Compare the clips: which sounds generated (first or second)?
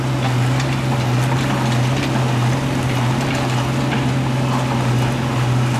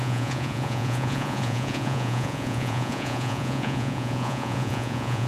second